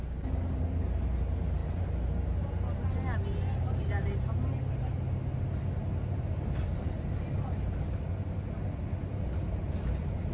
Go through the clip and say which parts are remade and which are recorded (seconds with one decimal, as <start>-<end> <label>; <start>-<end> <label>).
0.0-10.3 recorded